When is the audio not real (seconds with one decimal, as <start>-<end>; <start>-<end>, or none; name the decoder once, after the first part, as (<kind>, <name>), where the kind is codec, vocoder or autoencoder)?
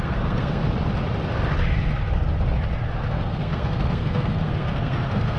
0.0-0.6 (codec, SNAC); 3.1-5.4